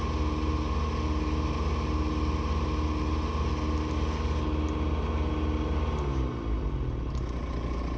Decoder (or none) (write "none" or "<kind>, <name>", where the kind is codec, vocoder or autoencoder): none